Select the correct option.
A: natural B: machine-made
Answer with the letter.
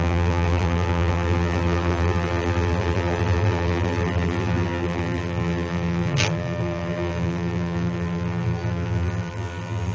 B